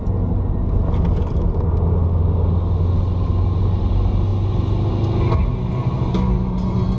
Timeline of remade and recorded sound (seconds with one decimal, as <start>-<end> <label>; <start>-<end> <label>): 0.0-7.0 recorded